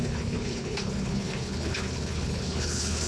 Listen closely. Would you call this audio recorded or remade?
remade